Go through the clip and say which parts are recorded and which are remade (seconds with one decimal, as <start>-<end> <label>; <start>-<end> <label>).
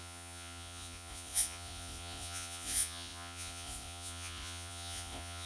0.0-5.5 remade